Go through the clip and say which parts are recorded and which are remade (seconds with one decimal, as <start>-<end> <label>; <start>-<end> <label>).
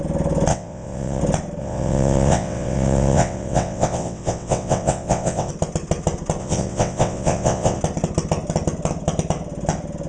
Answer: 0.0-0.5 recorded; 0.5-1.2 remade; 1.2-1.6 recorded; 1.6-5.5 remade; 5.5-6.4 recorded; 6.4-7.8 remade; 7.8-10.1 recorded